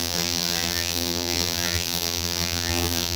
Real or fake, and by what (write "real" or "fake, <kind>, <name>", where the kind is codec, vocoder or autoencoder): fake, vocoder, BigVGAN v2